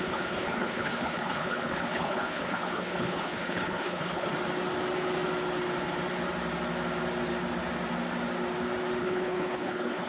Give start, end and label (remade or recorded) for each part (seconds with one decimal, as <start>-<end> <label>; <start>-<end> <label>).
0.0-4.3 remade; 4.3-9.0 recorded; 9.0-10.1 remade